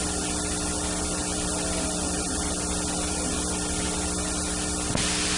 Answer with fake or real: real